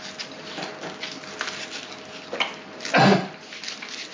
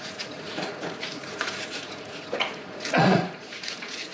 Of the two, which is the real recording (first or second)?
first